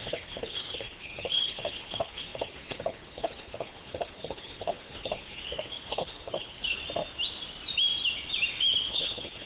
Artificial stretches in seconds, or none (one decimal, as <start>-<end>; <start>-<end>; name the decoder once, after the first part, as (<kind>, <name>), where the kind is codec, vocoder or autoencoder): 0.0-6.8 (codec, HILCodec); 8.9-9.5